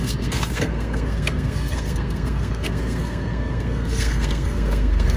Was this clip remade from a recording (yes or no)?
yes